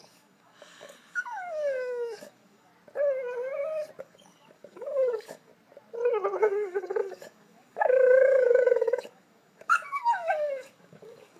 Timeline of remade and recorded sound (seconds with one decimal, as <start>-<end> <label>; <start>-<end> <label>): 0.0-2.7 remade; 2.7-4.0 recorded; 4.0-5.5 remade; 5.5-6.4 recorded; 6.4-11.4 remade

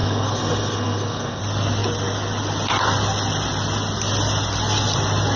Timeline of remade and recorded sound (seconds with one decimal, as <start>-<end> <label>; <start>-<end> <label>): 0.0-1.4 remade; 1.4-5.4 recorded

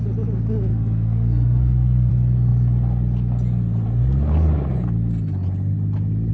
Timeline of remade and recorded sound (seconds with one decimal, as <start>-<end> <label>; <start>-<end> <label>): 0.0-0.7 recorded; 0.7-2.1 remade; 2.1-6.3 recorded

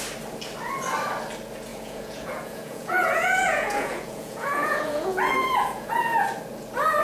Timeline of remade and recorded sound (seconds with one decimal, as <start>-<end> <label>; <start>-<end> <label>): 0.0-1.7 recorded; 1.7-5.9 remade; 5.9-7.0 recorded